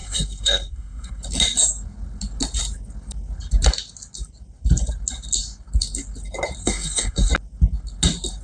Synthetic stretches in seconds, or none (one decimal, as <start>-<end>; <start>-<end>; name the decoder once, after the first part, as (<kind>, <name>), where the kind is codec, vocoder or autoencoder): 0.0-1.2 (codec, SNAC); 6.6-7.3